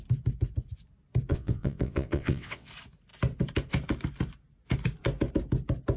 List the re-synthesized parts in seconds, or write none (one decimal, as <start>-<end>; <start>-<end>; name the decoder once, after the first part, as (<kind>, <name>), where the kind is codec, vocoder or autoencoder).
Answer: 1.3-2.7 (vocoder, WaveNeXt)